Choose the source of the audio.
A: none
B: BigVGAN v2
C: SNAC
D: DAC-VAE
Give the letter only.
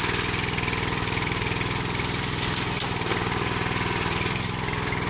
B